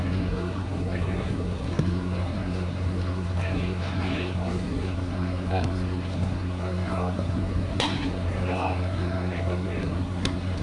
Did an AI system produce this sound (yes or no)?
yes